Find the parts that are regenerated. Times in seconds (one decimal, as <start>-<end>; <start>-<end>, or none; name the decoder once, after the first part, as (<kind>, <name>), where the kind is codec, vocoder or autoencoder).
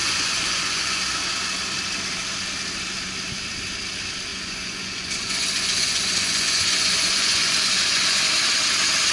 0.0-1.0 (vocoder, Vocos); 4.3-8.3